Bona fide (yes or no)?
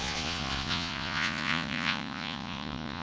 no